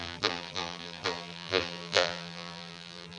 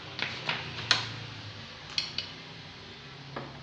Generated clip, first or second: first